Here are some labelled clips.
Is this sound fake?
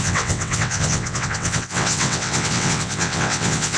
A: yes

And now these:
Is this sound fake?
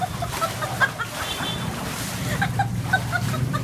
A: no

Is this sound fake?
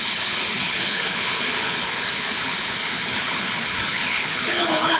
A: yes